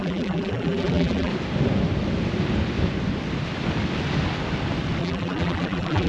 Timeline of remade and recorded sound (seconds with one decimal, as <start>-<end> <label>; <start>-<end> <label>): 0.0-1.3 remade; 1.3-5.0 recorded; 5.0-6.1 remade